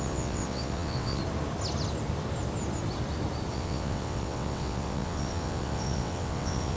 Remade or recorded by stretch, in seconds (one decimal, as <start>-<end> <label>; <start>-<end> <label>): 0.0-1.2 remade; 1.2-3.5 recorded; 3.5-6.8 remade

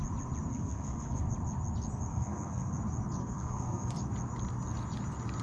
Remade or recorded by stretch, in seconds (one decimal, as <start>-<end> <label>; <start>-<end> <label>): 0.0-0.5 recorded; 0.5-1.2 remade; 1.2-2.1 recorded; 2.1-2.7 remade; 2.7-3.2 recorded; 3.2-3.9 remade; 3.9-5.4 recorded

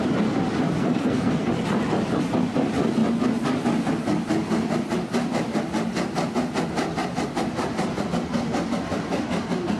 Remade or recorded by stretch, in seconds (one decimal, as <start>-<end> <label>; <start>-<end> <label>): 0.0-0.8 recorded; 0.8-1.5 remade; 1.5-9.8 recorded

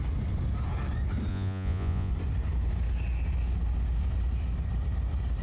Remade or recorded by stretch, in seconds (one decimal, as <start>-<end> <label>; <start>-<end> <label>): 0.0-1.3 recorded; 1.3-2.1 remade; 2.1-5.4 recorded

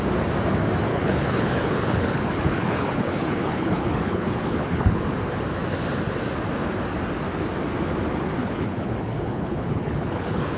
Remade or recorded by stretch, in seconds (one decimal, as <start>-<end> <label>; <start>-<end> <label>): 0.0-0.9 recorded; 0.9-5.0 remade; 5.0-8.4 recorded; 8.4-10.6 remade

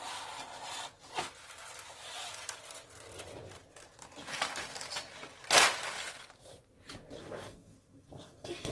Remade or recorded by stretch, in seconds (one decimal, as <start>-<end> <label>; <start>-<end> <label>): 0.0-7.2 recorded; 7.2-8.7 remade